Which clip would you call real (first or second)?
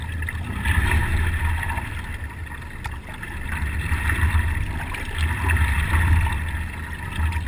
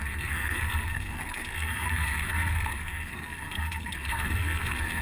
first